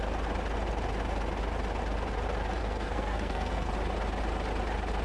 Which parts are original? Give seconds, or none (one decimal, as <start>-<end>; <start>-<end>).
0.0-2.6; 3.7-5.0